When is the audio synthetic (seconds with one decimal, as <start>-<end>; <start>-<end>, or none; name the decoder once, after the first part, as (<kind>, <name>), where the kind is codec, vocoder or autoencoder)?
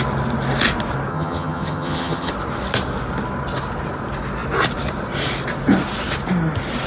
1.1-2.3 (vocoder, HiFi-GAN)